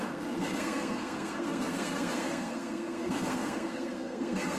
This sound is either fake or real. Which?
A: fake